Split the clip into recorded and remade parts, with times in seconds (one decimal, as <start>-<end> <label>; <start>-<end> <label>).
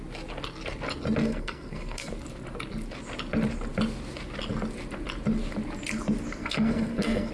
0.0-1.2 recorded; 1.2-2.1 remade; 2.1-6.4 recorded; 6.4-7.3 remade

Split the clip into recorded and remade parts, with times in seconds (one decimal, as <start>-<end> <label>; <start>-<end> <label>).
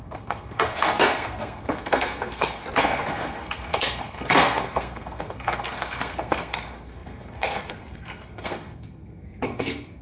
0.0-10.0 remade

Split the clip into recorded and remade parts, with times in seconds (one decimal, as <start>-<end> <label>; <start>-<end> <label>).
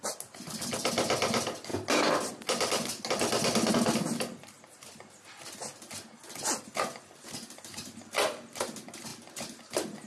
0.0-10.1 recorded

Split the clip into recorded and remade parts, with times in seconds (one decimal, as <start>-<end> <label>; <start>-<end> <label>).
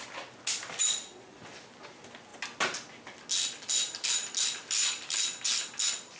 0.0-0.8 recorded; 0.8-1.4 remade; 1.4-6.2 recorded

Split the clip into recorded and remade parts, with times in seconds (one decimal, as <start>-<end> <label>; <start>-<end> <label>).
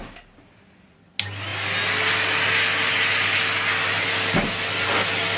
0.0-5.4 recorded